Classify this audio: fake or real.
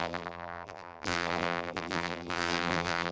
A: fake